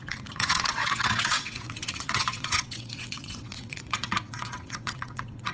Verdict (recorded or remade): remade